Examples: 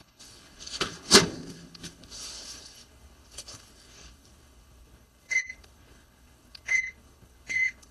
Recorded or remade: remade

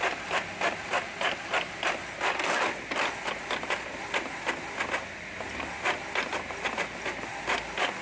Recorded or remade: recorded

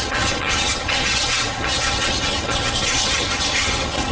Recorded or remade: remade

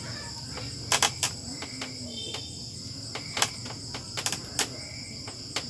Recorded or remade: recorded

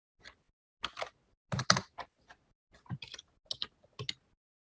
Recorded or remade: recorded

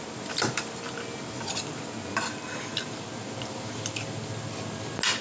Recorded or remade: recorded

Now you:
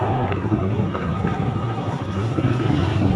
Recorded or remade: remade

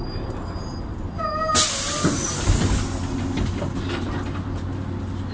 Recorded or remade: recorded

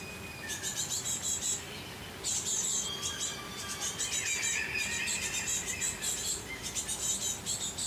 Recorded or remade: recorded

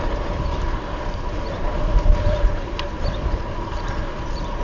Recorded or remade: remade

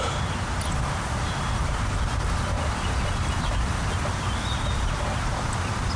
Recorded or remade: recorded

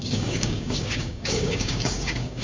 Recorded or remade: remade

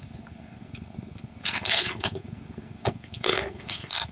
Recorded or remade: remade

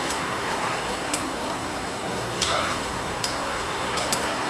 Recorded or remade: remade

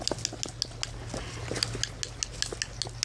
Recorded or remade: recorded